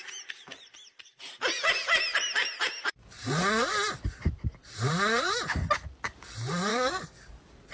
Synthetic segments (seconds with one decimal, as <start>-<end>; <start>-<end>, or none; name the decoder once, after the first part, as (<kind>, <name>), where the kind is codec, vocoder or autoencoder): 6.7-7.3 (codec, DAC)